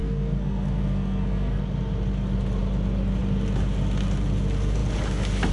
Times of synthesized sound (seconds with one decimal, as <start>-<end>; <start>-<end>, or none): 0.0-1.6